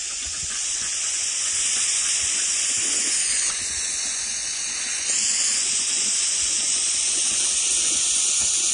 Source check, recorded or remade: remade